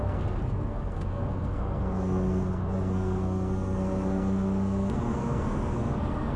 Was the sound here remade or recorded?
remade